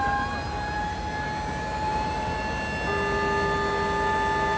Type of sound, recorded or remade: recorded